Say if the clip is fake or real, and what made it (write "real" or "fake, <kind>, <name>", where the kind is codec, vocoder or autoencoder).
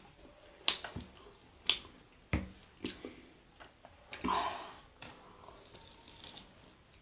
real